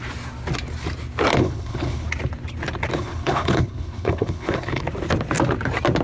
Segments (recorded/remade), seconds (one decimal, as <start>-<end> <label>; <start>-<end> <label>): 0.0-1.3 recorded; 1.3-2.1 remade; 2.1-2.9 recorded; 2.9-4.8 remade; 4.8-6.0 recorded